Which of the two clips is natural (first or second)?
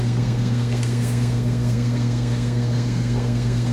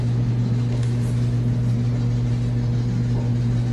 second